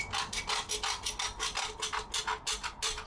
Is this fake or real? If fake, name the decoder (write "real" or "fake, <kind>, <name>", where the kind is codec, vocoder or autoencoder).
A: real